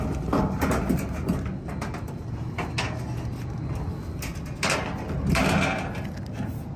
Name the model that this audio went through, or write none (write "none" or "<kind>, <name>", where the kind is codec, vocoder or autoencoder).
none